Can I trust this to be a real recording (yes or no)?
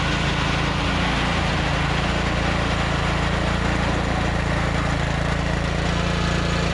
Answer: yes